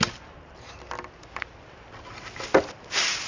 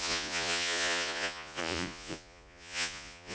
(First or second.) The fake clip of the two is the second